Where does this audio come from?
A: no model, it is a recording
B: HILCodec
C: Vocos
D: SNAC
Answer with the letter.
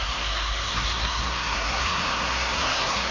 D